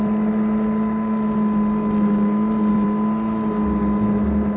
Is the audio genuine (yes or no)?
yes